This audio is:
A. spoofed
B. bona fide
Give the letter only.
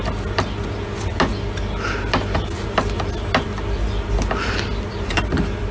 B